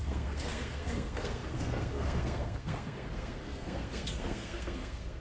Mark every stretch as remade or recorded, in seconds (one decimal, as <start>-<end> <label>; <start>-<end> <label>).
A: 0.0-5.2 remade